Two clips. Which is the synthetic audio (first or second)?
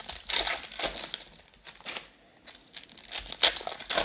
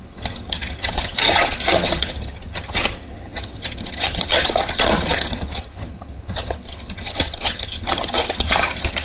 second